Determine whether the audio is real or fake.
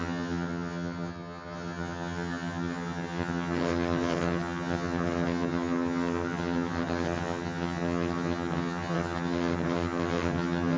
fake